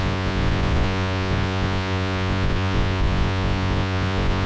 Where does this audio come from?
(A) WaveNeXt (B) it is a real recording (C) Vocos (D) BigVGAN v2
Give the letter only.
C